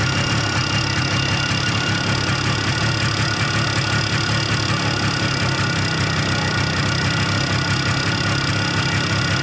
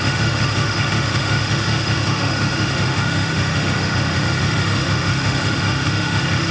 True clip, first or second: first